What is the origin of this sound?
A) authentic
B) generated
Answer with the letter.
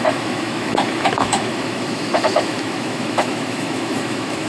B